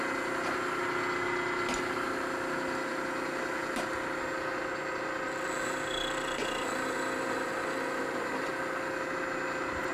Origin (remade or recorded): recorded